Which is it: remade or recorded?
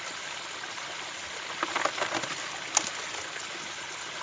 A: recorded